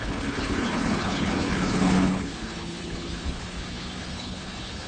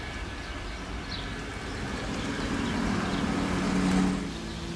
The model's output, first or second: first